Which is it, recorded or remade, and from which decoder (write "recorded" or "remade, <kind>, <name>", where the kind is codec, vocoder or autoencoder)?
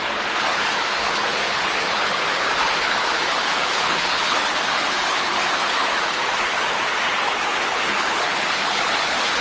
remade, codec, HILCodec